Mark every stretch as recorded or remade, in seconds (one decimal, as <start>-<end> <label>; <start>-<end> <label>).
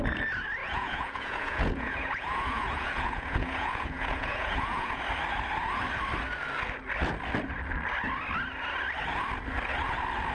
0.0-0.6 recorded; 0.6-5.0 remade; 5.0-10.3 recorded